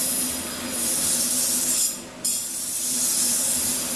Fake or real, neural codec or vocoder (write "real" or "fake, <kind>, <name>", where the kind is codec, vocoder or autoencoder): real